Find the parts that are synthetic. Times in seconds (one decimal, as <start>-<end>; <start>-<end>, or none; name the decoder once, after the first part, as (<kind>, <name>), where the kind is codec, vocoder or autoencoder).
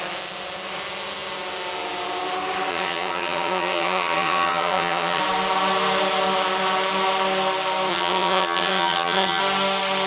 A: 2.7-5.2 (vocoder, HiFi-GAN); 7.9-9.4